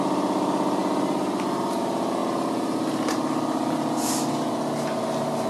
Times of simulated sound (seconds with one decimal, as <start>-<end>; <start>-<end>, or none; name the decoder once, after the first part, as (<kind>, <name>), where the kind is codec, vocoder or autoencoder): none